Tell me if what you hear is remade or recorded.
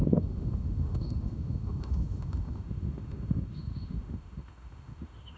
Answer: remade